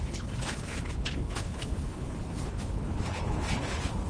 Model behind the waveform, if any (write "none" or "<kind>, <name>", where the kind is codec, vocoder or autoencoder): codec, HILCodec